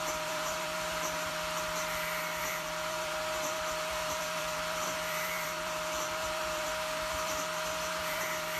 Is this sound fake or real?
fake